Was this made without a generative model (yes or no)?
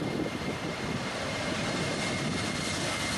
yes